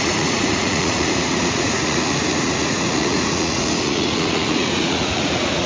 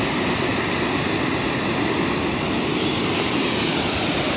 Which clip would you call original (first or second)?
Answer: second